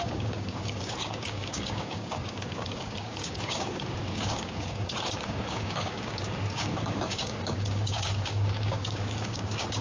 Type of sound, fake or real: fake